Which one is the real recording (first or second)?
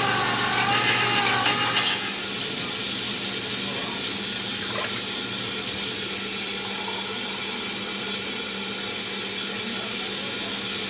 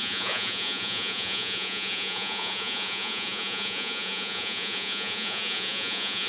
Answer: first